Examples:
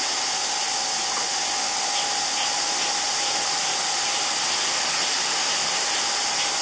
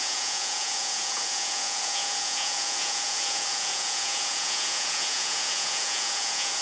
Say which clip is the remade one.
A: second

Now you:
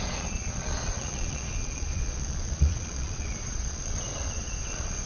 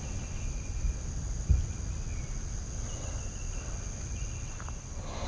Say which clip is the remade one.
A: first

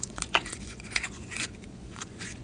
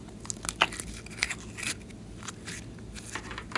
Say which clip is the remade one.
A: first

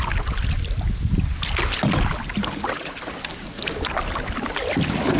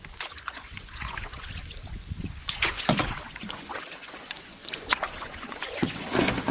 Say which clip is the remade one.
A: second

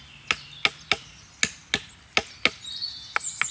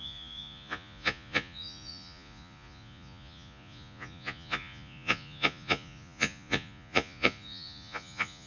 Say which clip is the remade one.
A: second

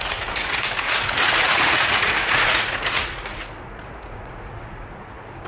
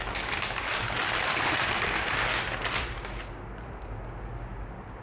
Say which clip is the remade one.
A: first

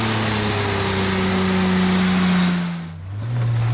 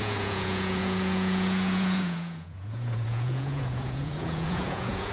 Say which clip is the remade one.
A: second